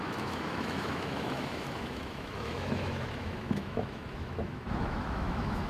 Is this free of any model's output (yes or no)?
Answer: no